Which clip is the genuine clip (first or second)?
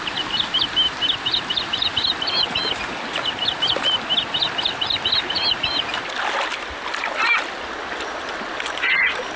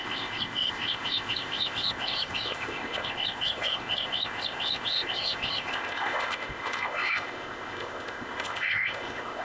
first